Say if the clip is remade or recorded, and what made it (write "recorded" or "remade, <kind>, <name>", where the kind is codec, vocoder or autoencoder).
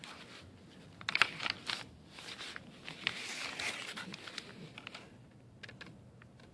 recorded